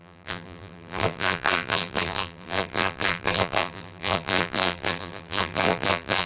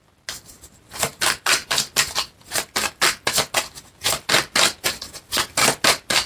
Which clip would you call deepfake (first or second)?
first